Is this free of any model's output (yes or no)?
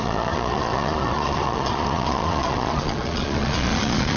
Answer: no